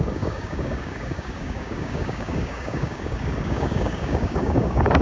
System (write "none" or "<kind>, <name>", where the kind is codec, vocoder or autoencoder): codec, DAC